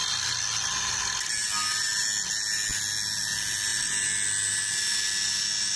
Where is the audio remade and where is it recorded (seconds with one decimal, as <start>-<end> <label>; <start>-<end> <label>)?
0.0-5.8 recorded

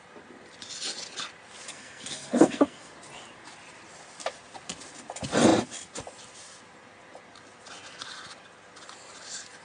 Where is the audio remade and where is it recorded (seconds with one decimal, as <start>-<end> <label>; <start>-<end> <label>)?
0.0-1.7 recorded; 1.7-2.9 remade; 2.9-9.6 recorded

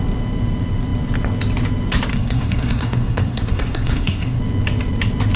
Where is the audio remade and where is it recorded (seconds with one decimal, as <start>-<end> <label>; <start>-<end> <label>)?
0.0-2.1 recorded; 2.1-4.4 remade; 4.4-5.4 recorded

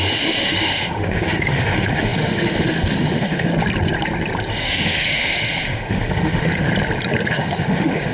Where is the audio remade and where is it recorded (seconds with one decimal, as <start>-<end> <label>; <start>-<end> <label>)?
0.0-3.5 remade; 3.5-4.5 recorded; 4.5-6.7 remade; 6.7-7.3 recorded; 7.3-8.1 remade

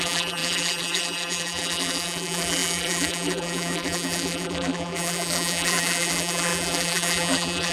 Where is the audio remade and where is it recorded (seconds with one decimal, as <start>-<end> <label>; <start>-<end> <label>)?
0.0-7.7 remade